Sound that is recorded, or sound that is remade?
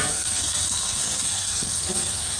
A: remade